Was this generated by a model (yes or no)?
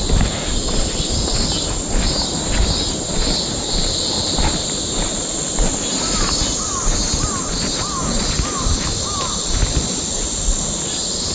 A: no